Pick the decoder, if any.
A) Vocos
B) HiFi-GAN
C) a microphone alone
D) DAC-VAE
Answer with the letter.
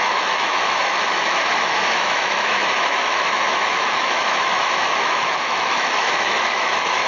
D